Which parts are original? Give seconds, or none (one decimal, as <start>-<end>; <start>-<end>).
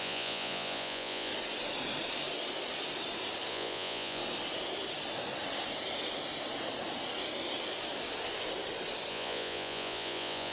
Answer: 1.3-3.5; 4.2-9.1